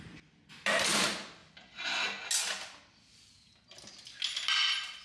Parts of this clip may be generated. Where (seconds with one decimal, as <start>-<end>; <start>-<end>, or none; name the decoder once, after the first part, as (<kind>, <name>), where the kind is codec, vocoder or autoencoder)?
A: none